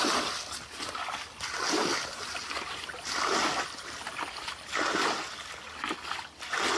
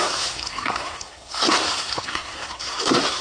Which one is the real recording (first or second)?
first